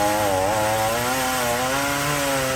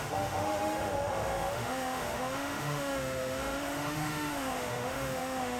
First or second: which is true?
first